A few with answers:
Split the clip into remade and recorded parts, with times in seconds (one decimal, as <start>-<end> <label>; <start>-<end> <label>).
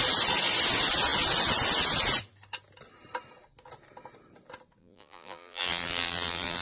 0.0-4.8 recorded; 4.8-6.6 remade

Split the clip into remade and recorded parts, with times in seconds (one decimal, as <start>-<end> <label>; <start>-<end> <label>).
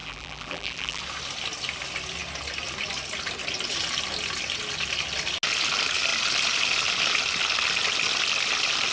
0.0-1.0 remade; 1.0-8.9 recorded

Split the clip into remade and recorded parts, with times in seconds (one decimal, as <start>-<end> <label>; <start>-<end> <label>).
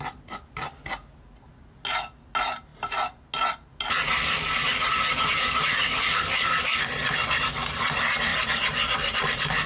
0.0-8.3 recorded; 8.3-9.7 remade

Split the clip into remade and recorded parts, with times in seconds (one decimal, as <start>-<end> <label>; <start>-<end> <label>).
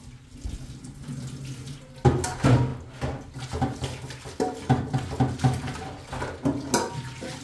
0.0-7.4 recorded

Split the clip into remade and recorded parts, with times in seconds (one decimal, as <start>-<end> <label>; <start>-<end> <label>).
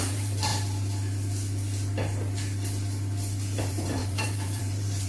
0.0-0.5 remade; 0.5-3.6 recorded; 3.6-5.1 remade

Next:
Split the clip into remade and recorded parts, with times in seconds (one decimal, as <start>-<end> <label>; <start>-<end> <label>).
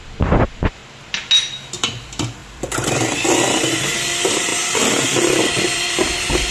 0.0-0.8 remade; 0.8-1.9 recorded; 1.9-4.5 remade; 4.5-5.1 recorded; 5.1-6.5 remade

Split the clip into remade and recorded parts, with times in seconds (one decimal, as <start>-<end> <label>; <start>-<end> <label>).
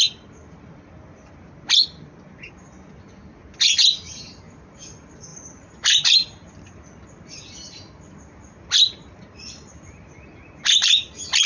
0.0-11.5 recorded